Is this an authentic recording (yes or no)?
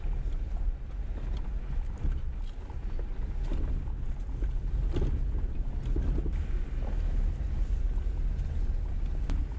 yes